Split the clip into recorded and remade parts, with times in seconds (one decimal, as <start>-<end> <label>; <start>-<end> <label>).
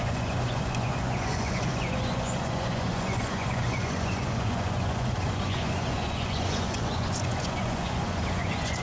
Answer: 0.0-8.8 remade